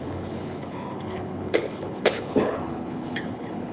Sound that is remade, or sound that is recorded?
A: remade